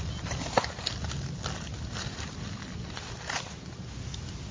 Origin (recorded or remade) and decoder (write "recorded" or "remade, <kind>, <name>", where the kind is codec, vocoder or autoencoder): recorded